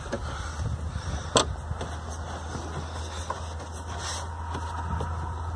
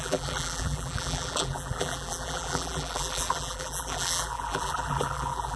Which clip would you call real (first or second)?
first